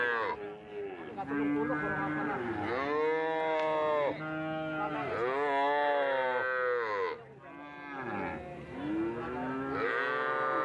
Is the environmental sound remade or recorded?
recorded